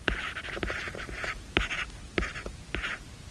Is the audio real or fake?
real